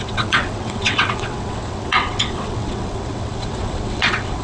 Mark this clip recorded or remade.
remade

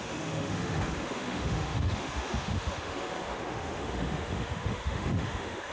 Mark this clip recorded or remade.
remade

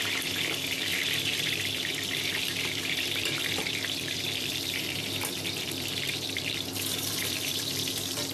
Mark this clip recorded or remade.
remade